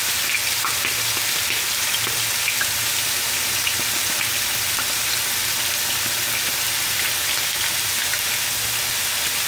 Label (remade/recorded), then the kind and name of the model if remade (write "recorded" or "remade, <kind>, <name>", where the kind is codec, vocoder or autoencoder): recorded